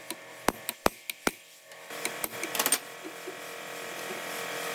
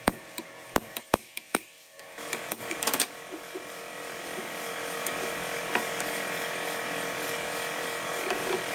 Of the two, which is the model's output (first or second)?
second